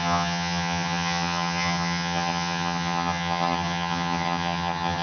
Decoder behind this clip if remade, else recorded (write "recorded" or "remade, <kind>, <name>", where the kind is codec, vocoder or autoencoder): remade, vocoder, HiFi-GAN